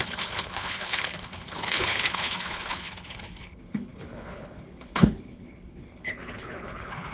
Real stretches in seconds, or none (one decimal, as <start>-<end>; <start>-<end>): none